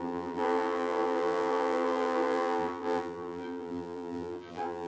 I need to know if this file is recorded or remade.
remade